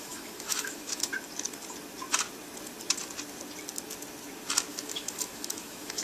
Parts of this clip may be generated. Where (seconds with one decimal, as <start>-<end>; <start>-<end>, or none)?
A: 0.0-1.1; 4.7-6.0

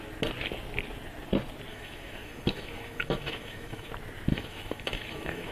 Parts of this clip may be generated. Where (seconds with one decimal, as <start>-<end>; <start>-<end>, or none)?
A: 1.7-3.9; 4.3-5.5

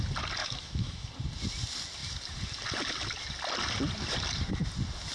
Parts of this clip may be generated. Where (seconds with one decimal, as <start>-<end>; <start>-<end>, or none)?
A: 0.4-1.1

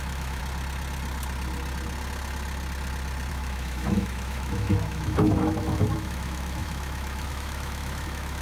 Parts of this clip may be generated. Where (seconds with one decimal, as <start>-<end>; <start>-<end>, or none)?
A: 0.0-0.4; 3.3-8.4